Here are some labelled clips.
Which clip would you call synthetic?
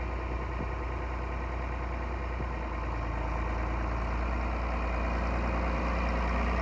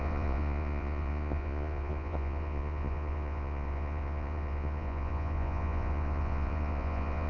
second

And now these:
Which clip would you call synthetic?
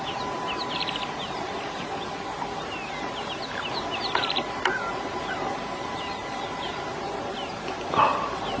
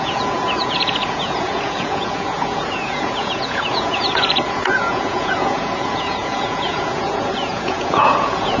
second